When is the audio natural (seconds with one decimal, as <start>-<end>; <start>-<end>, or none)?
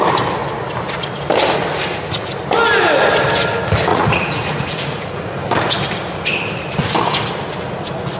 0.0-3.9; 5.2-8.2